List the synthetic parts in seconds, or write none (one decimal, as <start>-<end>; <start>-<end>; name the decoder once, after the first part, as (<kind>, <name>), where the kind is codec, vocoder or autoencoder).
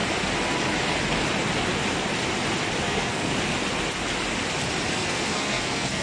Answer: 2.8-3.3 (codec, SNAC); 4.9-6.0